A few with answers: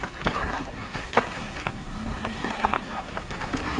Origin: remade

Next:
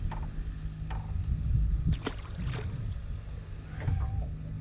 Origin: recorded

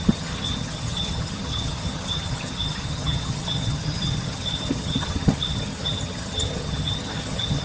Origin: remade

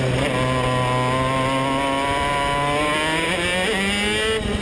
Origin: recorded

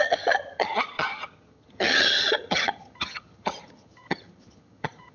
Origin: remade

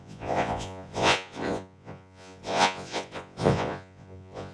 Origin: remade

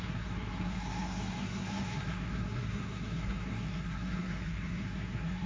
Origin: remade